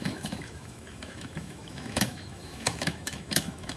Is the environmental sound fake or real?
fake